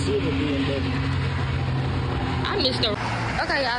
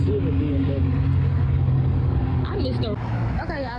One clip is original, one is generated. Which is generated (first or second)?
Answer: second